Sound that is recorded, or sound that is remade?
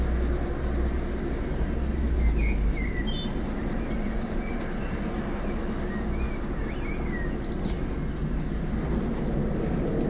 recorded